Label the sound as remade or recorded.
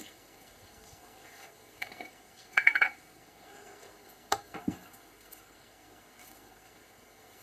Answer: remade